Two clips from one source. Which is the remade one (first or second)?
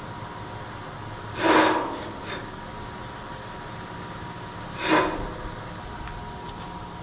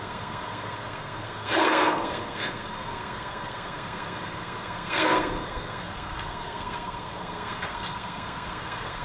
second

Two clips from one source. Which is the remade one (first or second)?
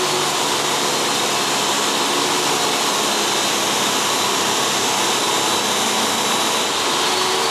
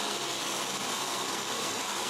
second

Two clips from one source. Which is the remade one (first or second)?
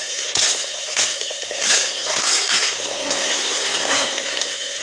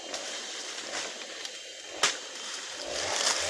first